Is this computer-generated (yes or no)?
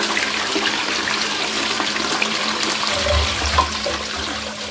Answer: no